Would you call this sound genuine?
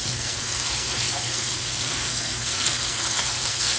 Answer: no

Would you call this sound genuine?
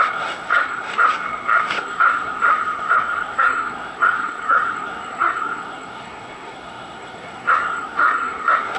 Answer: no